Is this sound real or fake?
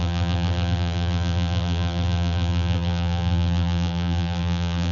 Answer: fake